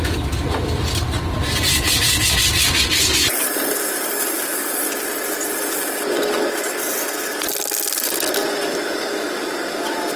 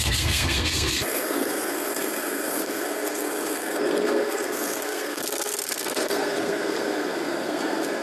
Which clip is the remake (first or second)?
second